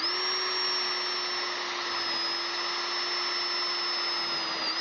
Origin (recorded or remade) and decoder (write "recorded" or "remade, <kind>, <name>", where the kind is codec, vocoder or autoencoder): recorded